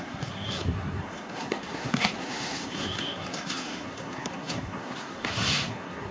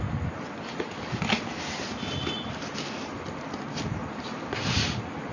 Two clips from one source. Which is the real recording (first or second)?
second